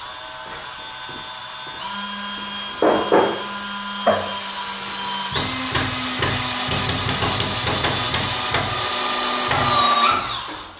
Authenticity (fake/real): real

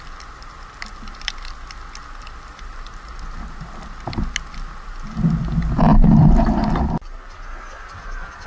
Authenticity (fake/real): real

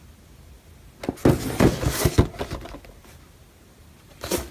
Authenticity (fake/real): real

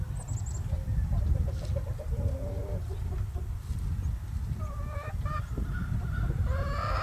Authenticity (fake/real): real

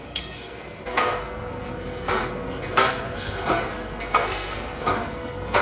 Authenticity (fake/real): fake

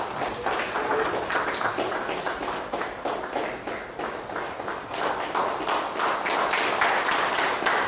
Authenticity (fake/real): real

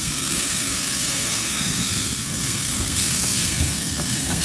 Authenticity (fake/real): fake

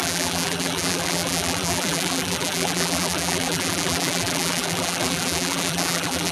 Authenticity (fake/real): fake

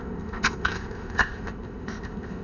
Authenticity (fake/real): fake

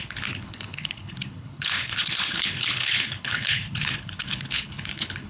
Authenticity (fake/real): fake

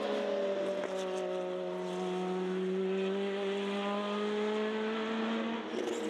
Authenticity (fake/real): real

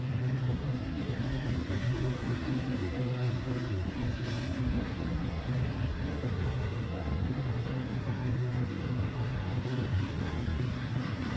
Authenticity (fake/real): fake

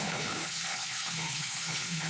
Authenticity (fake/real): fake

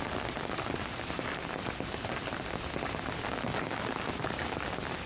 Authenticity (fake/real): real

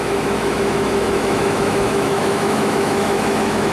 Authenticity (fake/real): fake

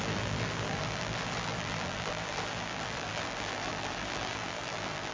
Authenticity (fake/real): fake